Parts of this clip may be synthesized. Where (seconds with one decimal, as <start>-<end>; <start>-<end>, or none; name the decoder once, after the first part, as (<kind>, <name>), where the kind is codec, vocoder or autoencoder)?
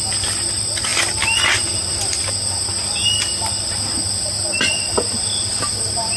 none